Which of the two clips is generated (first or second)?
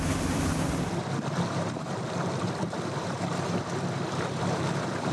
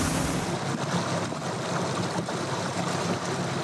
first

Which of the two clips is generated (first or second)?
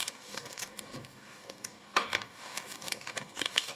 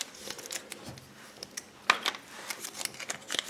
first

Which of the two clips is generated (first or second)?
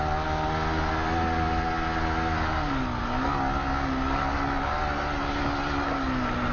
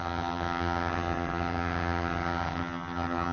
second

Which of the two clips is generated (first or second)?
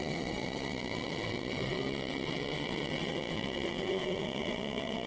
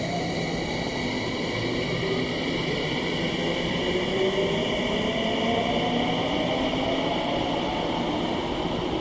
first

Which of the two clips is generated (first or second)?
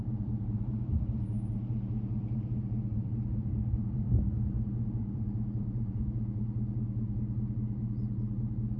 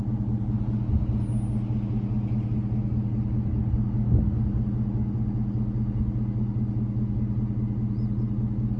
first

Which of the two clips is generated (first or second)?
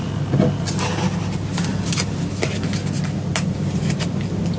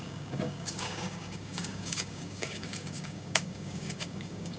second